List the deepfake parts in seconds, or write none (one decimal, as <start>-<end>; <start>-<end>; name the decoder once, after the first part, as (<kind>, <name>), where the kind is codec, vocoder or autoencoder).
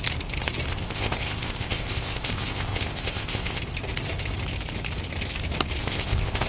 0.7-3.6 (codec, ZipCodec); 5.8-6.5